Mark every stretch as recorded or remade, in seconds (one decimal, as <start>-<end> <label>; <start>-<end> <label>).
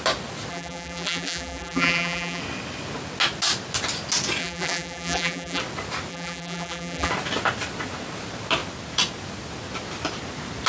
0.0-0.5 recorded; 0.5-2.4 remade; 2.4-4.4 recorded; 4.4-5.6 remade; 5.6-6.1 recorded; 6.1-7.1 remade; 7.1-10.7 recorded